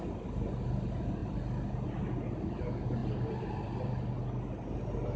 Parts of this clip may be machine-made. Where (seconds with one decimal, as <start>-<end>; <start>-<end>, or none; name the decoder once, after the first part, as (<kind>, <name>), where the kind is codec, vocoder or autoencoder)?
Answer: none

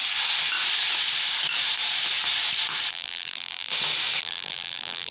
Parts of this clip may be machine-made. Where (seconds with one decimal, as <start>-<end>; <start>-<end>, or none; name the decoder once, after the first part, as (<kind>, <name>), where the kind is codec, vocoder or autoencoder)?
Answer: 2.9-3.7 (vocoder, BigVGAN v2); 4.2-5.1